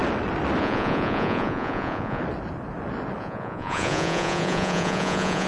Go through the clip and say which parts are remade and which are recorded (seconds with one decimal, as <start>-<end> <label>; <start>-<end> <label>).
0.0-0.6 recorded; 0.6-2.2 remade; 2.2-3.2 recorded; 3.2-5.5 remade